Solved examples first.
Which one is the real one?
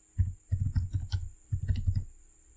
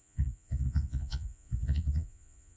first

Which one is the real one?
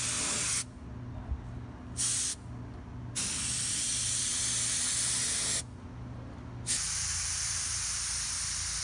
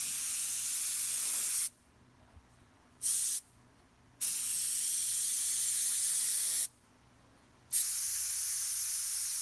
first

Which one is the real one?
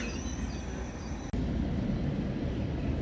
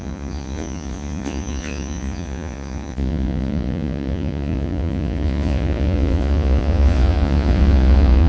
first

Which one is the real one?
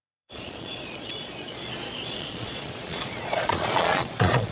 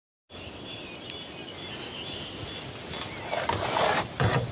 second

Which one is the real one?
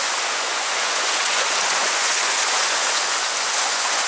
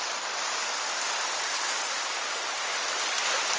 second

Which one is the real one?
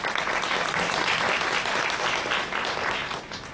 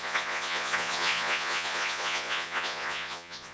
first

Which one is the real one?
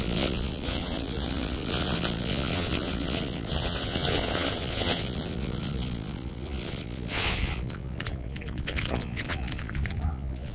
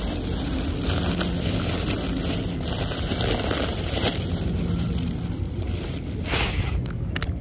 second